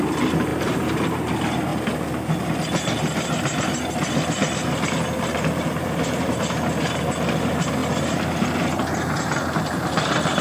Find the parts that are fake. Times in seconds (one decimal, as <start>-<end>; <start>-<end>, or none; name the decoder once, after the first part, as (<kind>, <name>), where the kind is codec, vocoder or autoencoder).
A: 0.0-1.7 (vocoder, BigVGAN v2); 5.2-7.8; 9.2-10.4